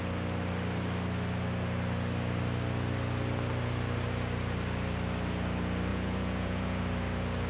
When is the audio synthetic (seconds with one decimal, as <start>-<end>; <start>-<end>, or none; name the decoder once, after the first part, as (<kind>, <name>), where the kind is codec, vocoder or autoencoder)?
5.9-6.8 (vocoder, Vocos)